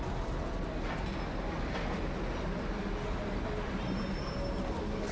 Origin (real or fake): real